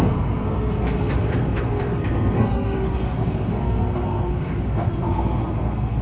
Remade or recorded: remade